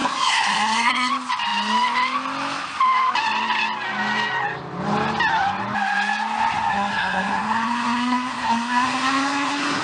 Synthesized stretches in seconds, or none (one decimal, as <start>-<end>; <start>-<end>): 0.0-1.1; 6.7-9.8